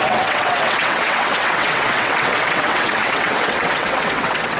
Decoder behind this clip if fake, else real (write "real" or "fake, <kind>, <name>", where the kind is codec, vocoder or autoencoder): fake, vocoder, WaveNeXt